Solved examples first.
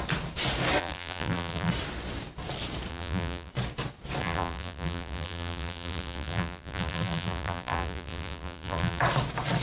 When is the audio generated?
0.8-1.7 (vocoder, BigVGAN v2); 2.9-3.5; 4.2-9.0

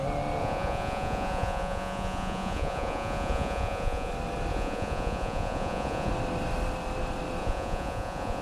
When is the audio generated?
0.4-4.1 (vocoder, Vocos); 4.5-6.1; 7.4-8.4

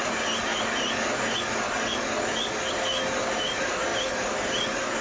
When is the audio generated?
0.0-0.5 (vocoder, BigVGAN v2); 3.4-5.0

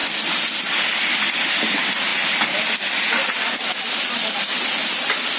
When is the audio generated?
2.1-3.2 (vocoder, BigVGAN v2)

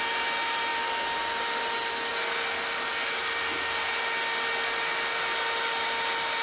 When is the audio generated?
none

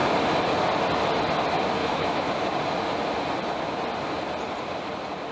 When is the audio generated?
1.8-2.3 (autoencoder, DAC-VAE)

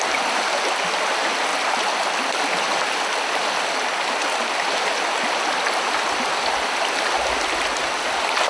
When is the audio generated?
none

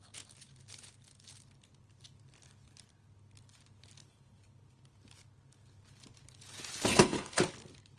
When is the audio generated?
6.9-7.4 (codec, HILCodec)